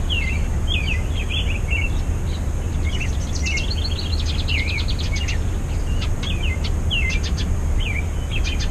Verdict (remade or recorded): recorded